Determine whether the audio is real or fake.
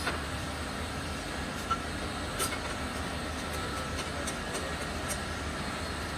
real